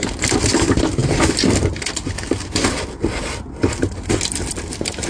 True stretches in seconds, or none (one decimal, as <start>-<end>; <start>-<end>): 0.0-5.1